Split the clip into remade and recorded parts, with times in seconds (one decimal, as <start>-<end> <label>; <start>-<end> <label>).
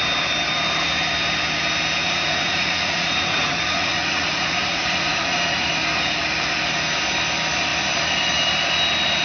0.0-2.0 recorded; 2.0-5.7 remade; 5.7-9.2 recorded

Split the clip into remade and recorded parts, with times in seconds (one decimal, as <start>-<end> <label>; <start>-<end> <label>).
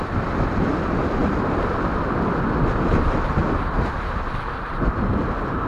0.0-5.7 recorded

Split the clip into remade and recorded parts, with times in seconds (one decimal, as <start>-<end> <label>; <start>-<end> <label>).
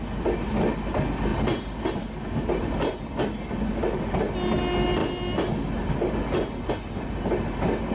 0.0-7.9 recorded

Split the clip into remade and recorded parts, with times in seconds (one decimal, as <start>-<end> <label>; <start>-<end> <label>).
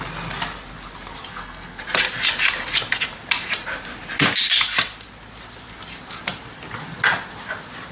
0.0-1.3 recorded; 1.3-1.8 remade; 1.8-7.9 recorded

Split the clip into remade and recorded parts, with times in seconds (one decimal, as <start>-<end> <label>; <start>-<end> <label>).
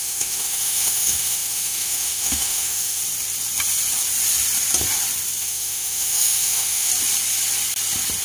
0.0-3.0 remade; 3.0-5.4 recorded; 5.4-6.9 remade; 6.9-8.2 recorded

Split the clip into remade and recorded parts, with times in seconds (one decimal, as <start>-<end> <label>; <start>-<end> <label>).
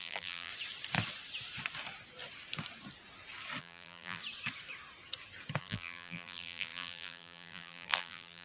0.0-0.5 remade; 0.5-3.6 recorded; 3.6-4.2 remade; 4.2-5.6 recorded; 5.6-8.4 remade